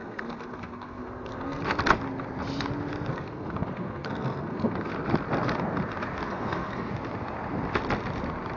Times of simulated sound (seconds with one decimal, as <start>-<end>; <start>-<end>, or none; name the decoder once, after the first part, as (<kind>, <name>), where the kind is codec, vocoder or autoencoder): 0.0-1.6 (codec, SNAC); 3.1-4.9; 6.3-6.9